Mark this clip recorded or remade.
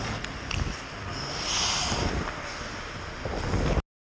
recorded